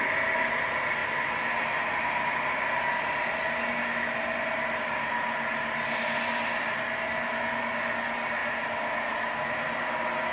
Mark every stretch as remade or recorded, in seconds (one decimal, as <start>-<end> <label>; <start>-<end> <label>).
0.0-10.3 recorded